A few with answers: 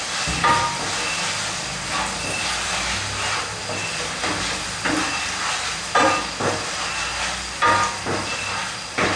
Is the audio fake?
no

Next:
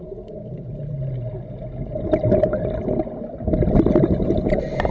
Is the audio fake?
no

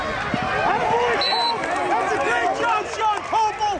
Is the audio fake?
no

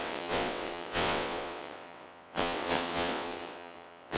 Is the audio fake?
yes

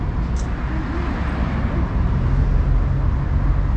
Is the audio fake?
no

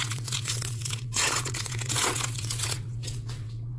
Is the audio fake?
yes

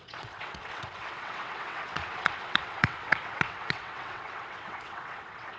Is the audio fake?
yes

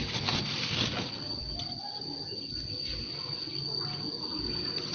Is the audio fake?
no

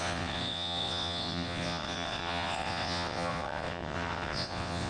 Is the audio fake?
yes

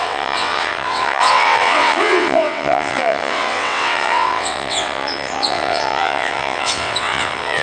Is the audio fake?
yes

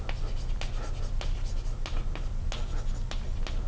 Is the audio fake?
no